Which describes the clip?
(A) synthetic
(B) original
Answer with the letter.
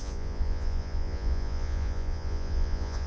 A